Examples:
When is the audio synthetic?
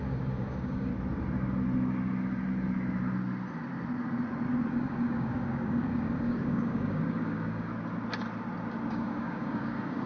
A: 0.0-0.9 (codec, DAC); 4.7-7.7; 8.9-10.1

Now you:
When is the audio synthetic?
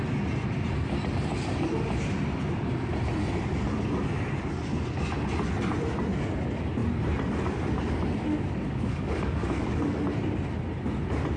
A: 8.3-10.0 (codec, DAC)